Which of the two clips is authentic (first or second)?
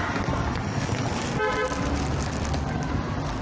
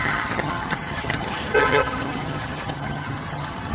first